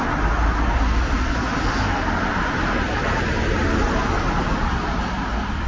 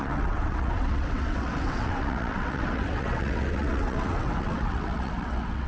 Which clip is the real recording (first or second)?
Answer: first